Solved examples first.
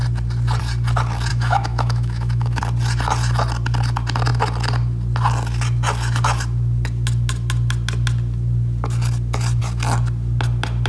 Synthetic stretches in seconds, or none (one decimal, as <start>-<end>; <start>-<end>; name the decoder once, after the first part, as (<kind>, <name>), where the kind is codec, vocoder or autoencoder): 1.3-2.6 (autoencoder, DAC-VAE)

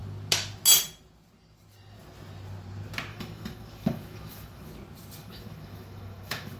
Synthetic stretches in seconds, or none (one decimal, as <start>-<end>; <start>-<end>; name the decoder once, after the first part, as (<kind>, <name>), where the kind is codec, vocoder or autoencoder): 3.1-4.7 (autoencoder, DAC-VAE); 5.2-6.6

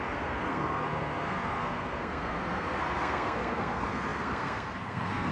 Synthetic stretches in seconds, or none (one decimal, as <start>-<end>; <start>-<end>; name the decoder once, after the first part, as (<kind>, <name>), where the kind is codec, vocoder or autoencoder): 0.0-5.3 (codec, SNAC)

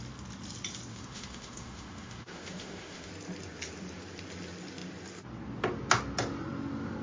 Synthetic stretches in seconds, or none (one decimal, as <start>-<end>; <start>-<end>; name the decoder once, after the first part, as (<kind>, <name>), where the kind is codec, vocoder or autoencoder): 0.9-3.1 (autoencoder, DAC-VAE)

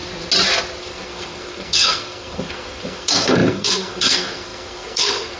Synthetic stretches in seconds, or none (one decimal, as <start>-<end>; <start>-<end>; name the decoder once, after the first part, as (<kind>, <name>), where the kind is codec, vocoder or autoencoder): 0.8-5.4 (codec, SNAC)

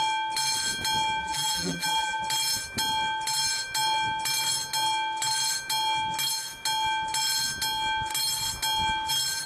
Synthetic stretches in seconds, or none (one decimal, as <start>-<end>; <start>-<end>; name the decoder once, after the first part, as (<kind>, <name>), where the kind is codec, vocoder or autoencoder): 1.2-2.2 (vocoder, BigVGAN v2)

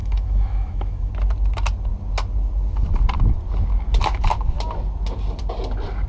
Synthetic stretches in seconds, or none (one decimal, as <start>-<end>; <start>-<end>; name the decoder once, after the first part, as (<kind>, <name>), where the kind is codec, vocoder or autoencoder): 0.0-1.1 (autoencoder, DAC-VAE)